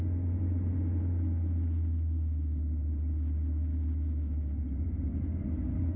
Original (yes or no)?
yes